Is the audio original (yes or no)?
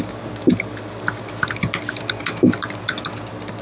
yes